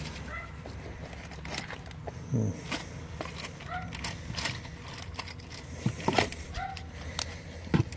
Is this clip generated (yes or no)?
no